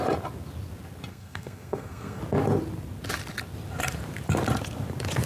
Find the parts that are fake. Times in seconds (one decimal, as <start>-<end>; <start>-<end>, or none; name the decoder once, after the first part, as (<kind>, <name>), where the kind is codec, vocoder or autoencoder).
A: 1.1-2.2 (codec, SNAC)